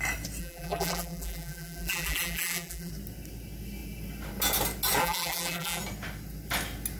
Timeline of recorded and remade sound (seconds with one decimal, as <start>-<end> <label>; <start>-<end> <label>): 0.0-0.4 recorded; 0.4-2.9 remade; 2.9-5.0 recorded; 5.0-5.8 remade; 5.8-7.0 recorded